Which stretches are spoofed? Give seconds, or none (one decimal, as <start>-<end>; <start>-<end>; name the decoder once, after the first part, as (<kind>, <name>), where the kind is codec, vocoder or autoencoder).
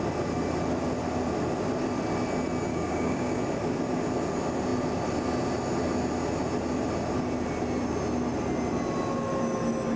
2.7-3.4 (codec, DAC)